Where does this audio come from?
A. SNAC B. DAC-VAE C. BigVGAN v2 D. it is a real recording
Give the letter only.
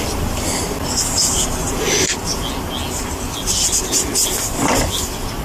D